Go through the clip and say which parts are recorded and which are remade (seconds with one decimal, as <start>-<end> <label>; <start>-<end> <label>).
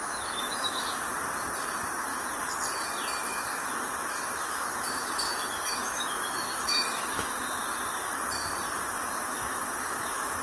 0.0-1.1 remade; 1.1-3.2 recorded; 3.2-7.6 remade; 7.6-8.8 recorded; 8.8-10.4 remade